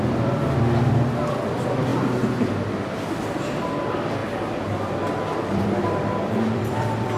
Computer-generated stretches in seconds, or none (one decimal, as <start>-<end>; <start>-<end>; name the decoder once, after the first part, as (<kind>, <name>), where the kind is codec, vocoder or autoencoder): 0.0-1.9 (vocoder, BigVGAN v2); 3.2-4.2; 5.4-7.2